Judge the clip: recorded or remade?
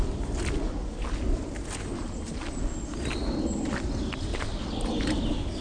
recorded